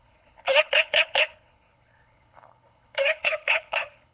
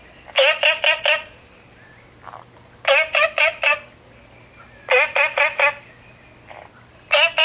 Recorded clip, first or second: second